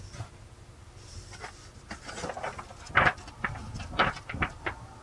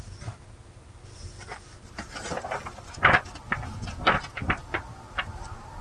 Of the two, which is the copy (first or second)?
first